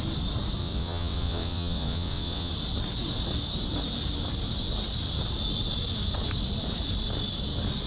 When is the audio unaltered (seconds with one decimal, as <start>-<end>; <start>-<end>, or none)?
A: 0.0-0.6; 2.5-7.9